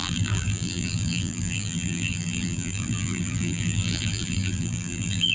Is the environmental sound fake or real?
fake